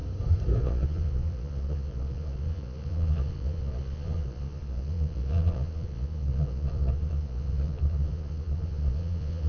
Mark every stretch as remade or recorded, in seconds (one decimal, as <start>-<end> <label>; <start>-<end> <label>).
0.0-0.6 recorded; 0.6-9.5 remade